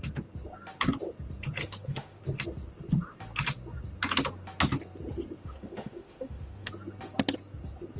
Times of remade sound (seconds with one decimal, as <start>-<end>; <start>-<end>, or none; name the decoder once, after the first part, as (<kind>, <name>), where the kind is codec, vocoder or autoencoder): 1.6-2.2 (autoencoder, DAC-VAE); 5.4-6.7